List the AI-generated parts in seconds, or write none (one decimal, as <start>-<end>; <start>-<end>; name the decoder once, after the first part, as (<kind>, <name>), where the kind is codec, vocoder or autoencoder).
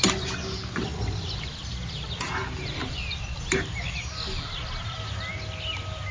none